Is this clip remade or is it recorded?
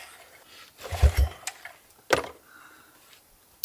recorded